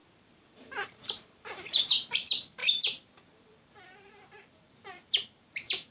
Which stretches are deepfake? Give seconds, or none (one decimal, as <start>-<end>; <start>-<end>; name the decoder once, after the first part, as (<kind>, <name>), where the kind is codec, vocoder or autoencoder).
0.0-5.9 (vocoder, BigVGAN v2)